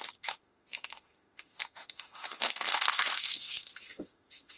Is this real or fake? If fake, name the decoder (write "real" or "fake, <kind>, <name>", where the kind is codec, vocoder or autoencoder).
fake, autoencoder, DAC-VAE